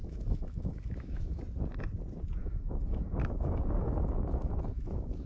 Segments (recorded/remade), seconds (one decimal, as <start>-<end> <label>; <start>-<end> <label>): 0.0-1.4 remade; 1.4-2.4 recorded; 2.4-5.3 remade